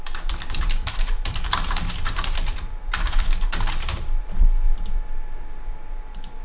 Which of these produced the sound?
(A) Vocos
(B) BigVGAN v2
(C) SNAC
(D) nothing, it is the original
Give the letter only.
B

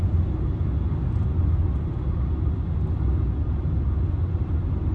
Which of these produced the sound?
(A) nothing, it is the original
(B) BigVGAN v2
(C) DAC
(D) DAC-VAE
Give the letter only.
A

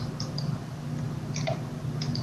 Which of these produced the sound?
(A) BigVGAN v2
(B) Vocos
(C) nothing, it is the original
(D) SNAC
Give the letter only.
A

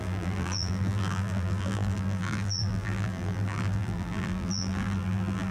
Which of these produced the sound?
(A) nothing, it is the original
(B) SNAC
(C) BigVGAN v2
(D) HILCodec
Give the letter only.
C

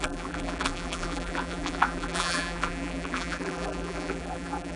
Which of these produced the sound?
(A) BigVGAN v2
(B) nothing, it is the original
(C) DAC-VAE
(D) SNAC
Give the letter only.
A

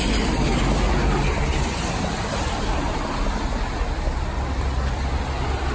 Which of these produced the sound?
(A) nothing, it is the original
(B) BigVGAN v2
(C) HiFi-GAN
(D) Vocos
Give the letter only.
A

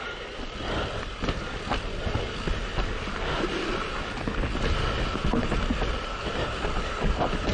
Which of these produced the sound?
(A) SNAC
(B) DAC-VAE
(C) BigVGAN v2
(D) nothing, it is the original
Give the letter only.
D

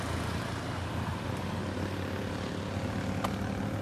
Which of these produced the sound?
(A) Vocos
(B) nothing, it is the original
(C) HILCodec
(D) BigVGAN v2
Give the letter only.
B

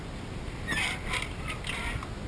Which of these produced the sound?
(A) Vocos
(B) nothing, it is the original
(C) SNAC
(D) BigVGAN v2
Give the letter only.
D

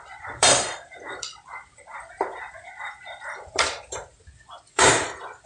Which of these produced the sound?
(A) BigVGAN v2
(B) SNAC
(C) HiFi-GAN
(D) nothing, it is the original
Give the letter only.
A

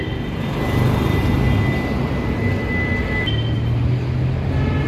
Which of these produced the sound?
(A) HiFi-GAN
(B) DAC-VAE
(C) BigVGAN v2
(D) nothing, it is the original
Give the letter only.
D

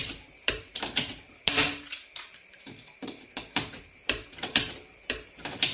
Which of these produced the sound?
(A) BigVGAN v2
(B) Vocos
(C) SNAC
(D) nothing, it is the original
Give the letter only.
A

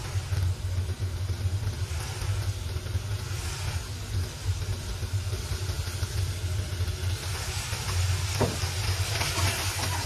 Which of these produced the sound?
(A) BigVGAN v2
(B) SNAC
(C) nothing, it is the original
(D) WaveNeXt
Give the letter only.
C